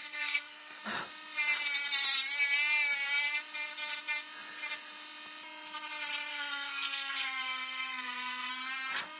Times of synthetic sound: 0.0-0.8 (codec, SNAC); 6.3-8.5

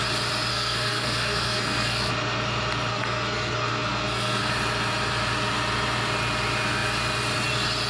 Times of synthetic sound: 0.5-2.1 (codec, SNAC); 2.9-4.5